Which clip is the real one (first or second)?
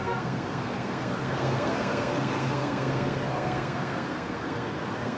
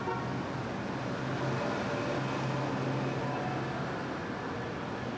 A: second